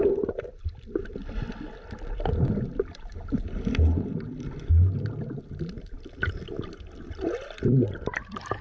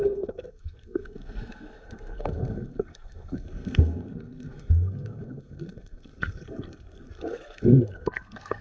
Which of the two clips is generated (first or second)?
second